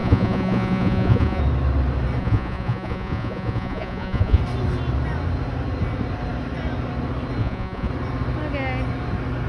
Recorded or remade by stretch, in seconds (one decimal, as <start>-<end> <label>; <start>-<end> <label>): 0.0-1.4 remade; 1.4-2.2 recorded; 2.2-4.4 remade; 4.4-7.4 recorded; 7.4-7.9 remade; 7.9-9.5 recorded